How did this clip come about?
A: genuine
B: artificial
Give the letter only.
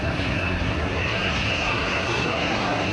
B